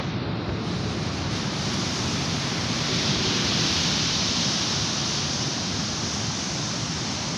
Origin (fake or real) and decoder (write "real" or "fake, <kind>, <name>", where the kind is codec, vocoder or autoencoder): real